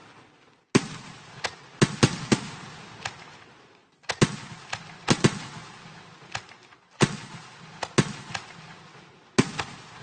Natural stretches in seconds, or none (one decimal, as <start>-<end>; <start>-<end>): 0.0-10.0